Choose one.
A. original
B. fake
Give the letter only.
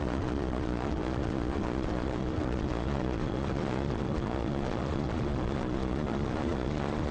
B